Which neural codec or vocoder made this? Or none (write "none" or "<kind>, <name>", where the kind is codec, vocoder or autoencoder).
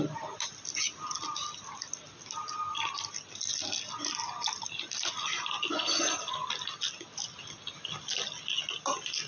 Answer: none